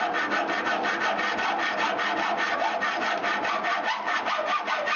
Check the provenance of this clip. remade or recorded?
recorded